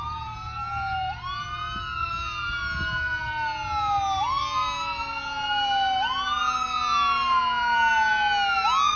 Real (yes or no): yes